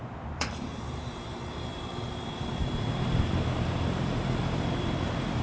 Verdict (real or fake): fake